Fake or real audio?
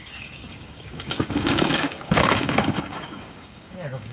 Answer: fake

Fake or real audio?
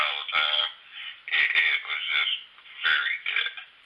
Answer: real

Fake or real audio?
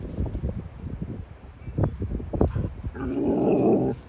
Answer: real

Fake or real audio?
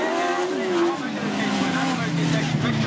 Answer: real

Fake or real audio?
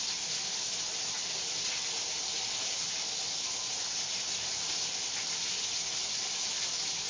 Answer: real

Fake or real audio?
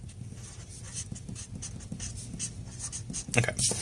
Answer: real